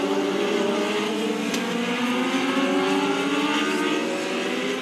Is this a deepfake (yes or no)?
no